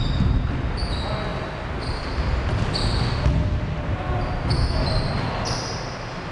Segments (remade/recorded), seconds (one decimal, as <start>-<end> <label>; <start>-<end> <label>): 0.0-6.3 recorded